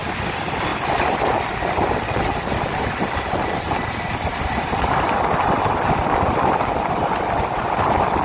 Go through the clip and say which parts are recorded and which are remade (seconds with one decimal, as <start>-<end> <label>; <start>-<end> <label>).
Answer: 0.0-8.2 recorded